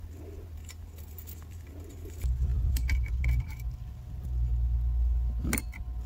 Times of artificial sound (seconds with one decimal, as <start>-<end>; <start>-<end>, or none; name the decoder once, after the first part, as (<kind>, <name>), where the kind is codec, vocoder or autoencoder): none